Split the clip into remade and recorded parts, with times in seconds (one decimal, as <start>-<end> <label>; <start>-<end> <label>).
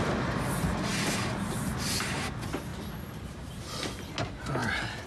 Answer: 0.0-2.7 recorded; 2.7-3.5 remade; 3.5-4.6 recorded; 4.6-5.1 remade